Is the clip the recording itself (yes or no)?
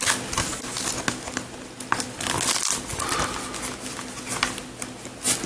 yes